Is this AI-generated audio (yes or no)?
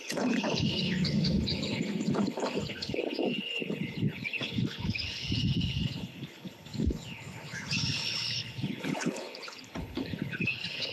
yes